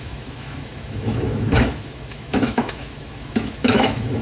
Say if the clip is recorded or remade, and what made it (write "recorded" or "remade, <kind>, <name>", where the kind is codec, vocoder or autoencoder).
remade, autoencoder, DAC-VAE